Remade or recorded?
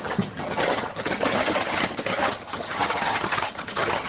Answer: remade